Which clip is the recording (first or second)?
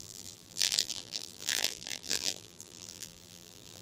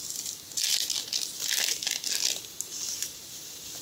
second